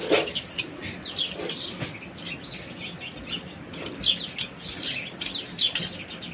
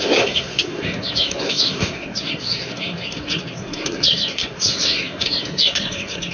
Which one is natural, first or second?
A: first